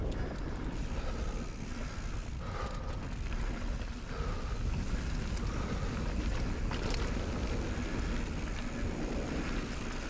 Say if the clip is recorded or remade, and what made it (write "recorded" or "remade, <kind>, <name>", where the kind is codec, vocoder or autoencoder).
recorded